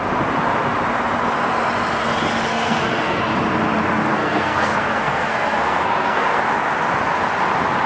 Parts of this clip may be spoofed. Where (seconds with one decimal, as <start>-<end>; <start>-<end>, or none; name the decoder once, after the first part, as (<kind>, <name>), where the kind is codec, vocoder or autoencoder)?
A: 2.5-3.2 (codec, SNAC); 4.1-6.4